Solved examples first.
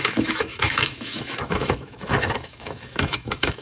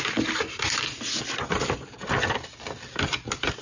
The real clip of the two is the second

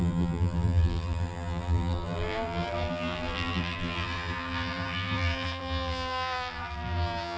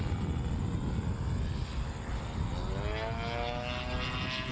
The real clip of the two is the second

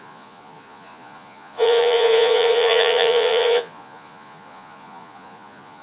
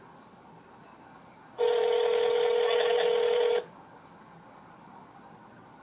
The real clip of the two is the second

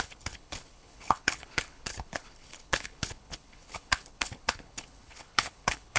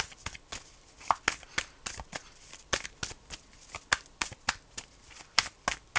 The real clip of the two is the second